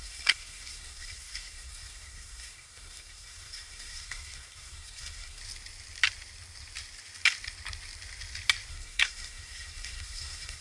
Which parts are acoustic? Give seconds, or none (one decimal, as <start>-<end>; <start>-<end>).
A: 5.4-8.7